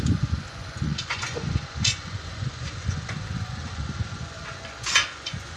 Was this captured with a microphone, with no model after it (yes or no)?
no